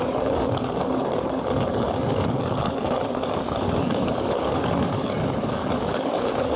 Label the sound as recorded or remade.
remade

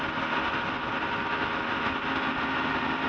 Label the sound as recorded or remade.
recorded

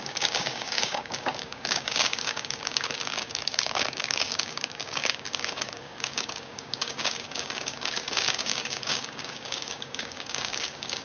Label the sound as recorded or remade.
remade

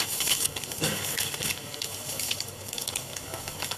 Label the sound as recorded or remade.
remade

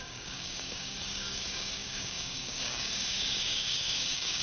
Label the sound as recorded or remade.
remade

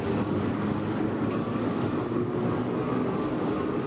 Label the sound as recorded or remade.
remade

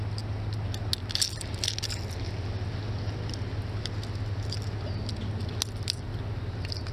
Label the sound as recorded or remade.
recorded